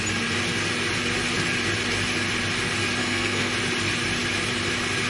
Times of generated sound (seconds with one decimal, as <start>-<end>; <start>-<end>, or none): 3.0-3.5